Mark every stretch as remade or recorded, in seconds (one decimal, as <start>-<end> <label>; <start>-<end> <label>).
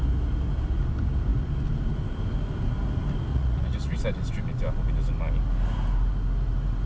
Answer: 0.0-3.3 recorded; 3.3-4.0 remade; 4.0-6.9 recorded